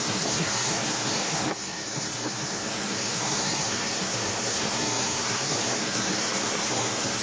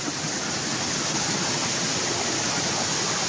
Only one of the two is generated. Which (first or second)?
first